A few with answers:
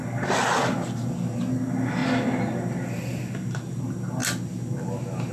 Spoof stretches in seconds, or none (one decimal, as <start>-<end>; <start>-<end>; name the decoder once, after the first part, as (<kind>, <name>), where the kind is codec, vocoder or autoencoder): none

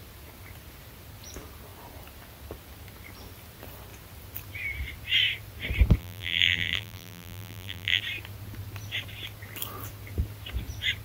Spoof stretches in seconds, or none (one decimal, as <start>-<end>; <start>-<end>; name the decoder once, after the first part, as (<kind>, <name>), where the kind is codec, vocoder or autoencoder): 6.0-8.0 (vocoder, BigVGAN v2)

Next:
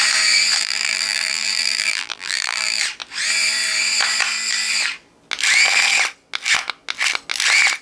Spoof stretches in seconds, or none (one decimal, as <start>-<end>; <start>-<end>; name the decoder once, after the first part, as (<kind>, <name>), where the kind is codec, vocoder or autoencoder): 0.6-2.8 (vocoder, BigVGAN v2)

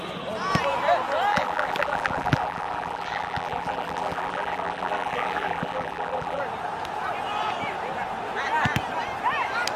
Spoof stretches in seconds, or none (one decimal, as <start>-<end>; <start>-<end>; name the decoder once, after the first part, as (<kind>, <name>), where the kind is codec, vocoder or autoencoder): 1.3-6.4 (vocoder, BigVGAN v2)

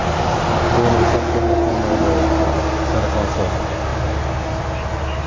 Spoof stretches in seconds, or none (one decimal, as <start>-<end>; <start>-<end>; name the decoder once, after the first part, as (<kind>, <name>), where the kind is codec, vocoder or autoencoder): none

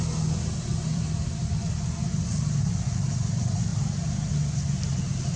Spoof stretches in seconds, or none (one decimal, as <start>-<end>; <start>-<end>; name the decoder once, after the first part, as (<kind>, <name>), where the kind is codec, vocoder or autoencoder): 0.9-1.6 (vocoder, BigVGAN v2)